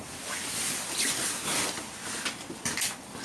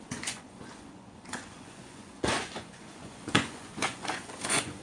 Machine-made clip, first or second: second